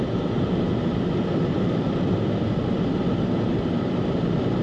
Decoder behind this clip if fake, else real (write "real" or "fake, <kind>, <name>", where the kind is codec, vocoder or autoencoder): real